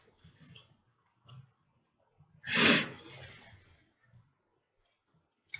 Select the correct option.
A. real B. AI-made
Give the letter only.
A